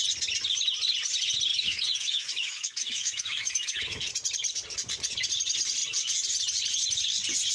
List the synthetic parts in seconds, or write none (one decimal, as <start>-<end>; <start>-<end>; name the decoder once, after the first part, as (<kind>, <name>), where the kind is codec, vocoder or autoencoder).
1.5-4.1 (autoencoder, DAC-VAE)